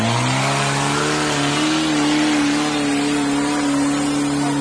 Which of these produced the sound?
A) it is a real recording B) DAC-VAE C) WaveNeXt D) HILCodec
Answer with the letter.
A